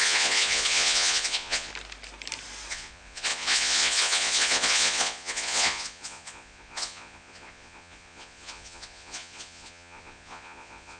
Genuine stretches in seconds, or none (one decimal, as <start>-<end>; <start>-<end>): 1.7-2.7